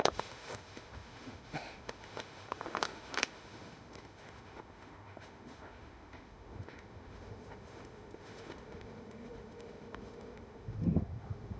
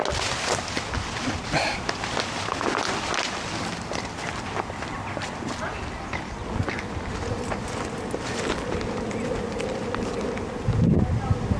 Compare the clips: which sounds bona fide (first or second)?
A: second